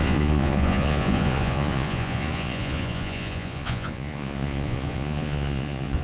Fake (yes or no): yes